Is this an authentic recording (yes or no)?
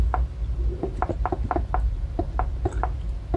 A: yes